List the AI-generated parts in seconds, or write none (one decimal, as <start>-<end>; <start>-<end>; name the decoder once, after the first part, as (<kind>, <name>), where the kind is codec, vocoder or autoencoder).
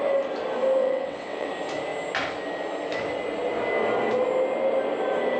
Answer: 0.8-1.5 (vocoder, WaveNeXt)